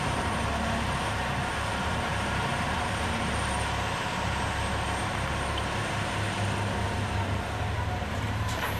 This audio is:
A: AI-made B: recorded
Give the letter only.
A